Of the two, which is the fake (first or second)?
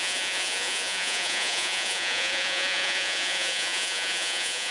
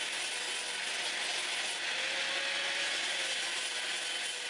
first